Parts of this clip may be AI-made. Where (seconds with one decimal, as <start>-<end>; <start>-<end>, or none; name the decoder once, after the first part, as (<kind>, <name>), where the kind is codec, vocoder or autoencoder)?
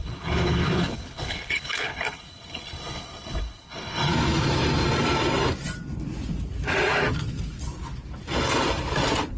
0.0-4.1 (codec, HILCodec)